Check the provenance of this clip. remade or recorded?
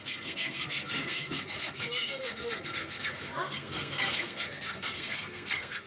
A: remade